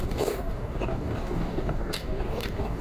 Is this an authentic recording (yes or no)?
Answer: no